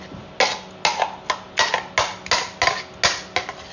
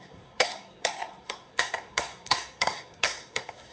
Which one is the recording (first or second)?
first